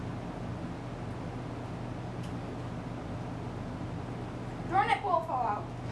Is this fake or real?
real